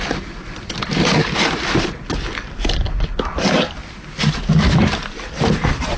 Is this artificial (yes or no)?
no